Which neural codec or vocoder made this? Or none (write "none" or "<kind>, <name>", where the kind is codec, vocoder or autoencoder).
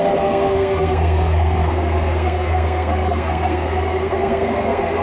codec, SNAC